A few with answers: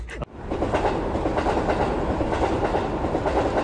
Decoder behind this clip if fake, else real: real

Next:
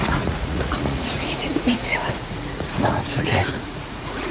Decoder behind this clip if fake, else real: fake, vocoder, Vocos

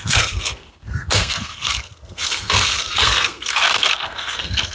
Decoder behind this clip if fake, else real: fake, codec, SNAC